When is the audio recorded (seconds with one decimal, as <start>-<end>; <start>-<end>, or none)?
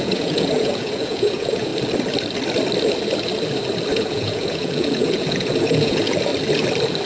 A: 1.7-3.9; 6.3-7.1